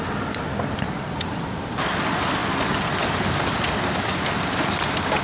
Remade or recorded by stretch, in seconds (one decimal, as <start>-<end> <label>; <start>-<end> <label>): 0.0-5.2 recorded